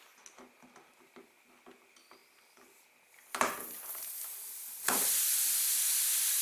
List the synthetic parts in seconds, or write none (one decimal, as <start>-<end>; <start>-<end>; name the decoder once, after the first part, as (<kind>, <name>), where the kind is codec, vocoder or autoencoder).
none